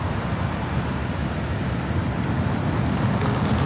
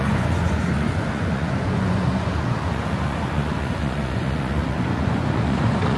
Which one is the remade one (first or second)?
second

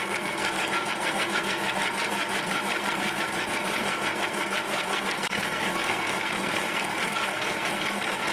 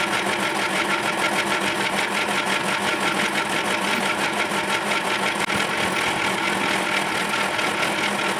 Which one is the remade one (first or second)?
first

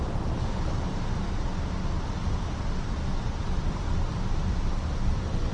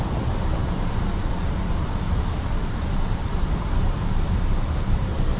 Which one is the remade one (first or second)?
second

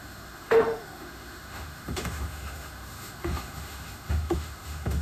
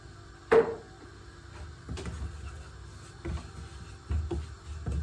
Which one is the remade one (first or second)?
first